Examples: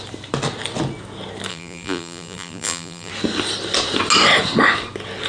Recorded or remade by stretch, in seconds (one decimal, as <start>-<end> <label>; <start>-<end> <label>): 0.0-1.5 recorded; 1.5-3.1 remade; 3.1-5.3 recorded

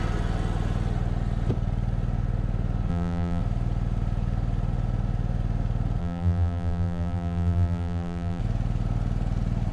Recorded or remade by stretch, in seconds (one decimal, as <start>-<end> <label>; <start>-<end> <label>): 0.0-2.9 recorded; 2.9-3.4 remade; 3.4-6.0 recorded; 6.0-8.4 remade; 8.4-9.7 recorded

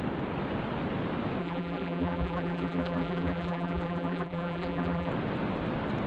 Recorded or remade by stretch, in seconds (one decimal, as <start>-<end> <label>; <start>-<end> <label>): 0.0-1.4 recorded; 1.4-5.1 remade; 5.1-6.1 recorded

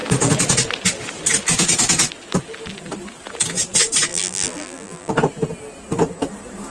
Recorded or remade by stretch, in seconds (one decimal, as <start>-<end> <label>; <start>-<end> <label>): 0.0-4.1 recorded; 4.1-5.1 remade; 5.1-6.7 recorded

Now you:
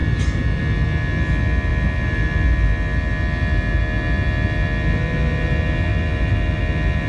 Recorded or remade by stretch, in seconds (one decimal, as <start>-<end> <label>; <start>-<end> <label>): 0.0-0.6 remade; 0.6-5.9 recorded; 5.9-6.6 remade; 6.6-7.1 recorded

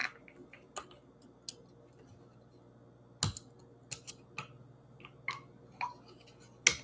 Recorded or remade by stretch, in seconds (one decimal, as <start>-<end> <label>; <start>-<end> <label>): 0.0-6.8 recorded

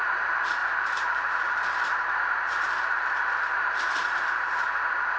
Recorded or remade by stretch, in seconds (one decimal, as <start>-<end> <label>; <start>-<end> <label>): 0.0-0.6 recorded; 0.6-3.7 remade; 3.7-5.2 recorded

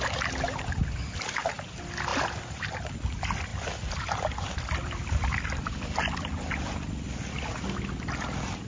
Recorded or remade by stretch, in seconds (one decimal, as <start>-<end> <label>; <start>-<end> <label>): 0.0-3.5 recorded; 3.5-6.6 remade; 6.6-8.7 recorded